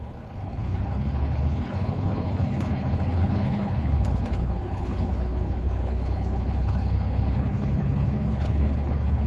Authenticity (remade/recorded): remade